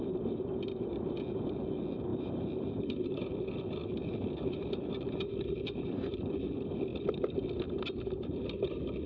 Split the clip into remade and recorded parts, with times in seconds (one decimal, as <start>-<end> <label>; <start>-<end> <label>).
0.0-2.1 recorded; 2.1-3.2 remade; 3.2-3.8 recorded; 3.8-6.4 remade; 6.4-9.1 recorded